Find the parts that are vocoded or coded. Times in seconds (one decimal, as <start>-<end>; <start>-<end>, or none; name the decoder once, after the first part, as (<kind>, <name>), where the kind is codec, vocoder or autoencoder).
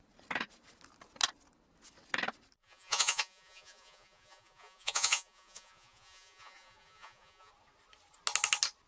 2.6-7.5 (vocoder, Vocos)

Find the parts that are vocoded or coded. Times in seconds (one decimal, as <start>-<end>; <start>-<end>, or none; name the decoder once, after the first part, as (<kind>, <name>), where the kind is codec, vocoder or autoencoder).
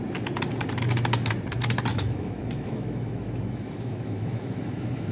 1.9-5.1 (autoencoder, DAC-VAE)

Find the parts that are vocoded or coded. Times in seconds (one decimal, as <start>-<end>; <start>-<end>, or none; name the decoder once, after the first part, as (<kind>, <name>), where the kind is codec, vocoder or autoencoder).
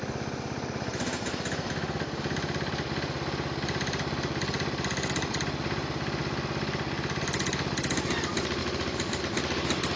0.9-2.7 (vocoder, BigVGAN v2); 8.6-9.2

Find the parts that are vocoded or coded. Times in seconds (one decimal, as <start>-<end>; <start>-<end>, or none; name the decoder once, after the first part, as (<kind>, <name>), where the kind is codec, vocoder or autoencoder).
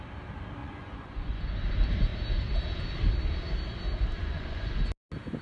0.6-1.4 (vocoder, Vocos); 4.2-4.8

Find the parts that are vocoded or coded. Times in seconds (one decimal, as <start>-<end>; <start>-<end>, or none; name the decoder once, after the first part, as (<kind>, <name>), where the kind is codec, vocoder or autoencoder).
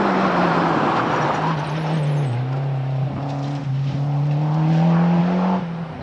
none